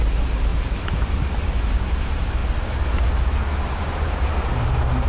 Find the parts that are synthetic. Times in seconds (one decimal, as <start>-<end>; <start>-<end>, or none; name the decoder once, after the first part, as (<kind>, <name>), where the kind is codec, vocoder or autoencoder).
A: 0.0-2.4 (vocoder, BigVGAN v2); 3.8-5.1